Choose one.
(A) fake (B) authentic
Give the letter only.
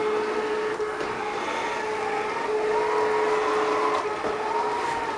B